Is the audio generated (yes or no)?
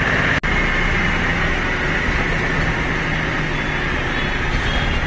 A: no